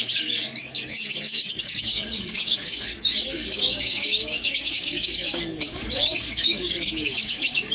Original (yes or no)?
no